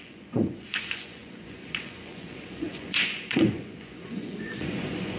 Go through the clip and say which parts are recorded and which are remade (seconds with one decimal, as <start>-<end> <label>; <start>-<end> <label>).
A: 0.0-5.2 remade